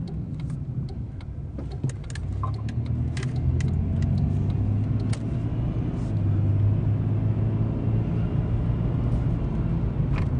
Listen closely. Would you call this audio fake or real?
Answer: real